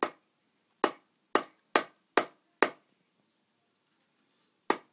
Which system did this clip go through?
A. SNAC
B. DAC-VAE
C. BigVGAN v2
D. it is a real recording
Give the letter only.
D